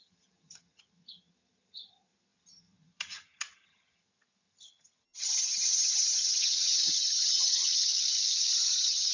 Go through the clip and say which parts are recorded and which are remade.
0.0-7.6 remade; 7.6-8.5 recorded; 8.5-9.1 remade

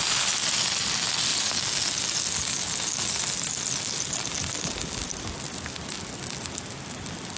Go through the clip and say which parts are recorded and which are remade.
0.0-7.4 recorded

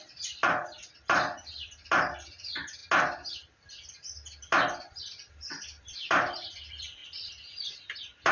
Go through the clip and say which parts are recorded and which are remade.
0.0-2.8 remade; 2.8-5.0 recorded; 5.0-7.0 remade; 7.0-7.7 recorded; 7.7-8.3 remade

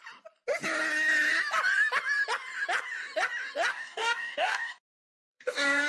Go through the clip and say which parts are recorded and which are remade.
0.0-3.7 recorded; 3.7-5.9 remade